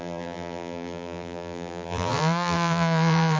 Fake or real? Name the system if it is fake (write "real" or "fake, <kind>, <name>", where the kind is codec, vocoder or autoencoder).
fake, vocoder, BigVGAN v2